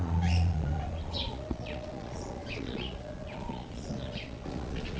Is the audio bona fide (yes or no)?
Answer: no